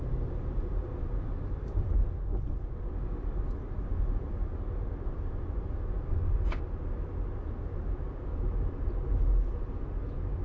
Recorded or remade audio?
recorded